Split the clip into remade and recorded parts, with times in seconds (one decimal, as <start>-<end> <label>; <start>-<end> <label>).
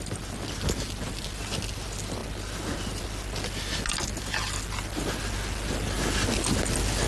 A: 0.0-7.1 recorded